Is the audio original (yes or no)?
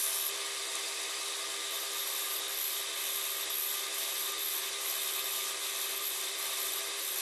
yes